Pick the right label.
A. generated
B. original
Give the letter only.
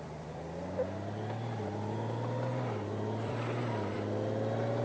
A